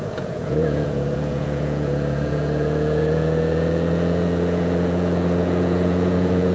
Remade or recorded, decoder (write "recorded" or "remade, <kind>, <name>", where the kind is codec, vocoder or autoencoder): remade, vocoder, Vocos